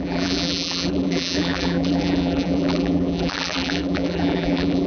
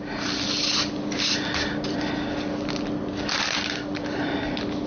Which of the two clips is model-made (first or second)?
first